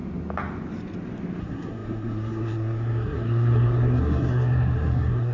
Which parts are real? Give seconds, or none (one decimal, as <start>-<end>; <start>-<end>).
0.0-1.4